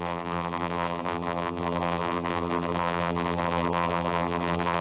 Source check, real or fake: fake